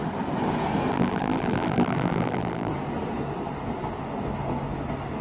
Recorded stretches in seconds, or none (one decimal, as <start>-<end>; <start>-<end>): 0.0-0.9; 2.7-5.2